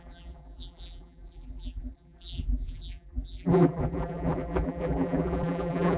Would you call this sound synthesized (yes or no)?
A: yes